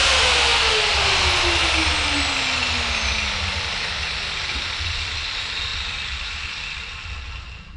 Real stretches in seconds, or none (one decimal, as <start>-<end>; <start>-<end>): 0.0-7.8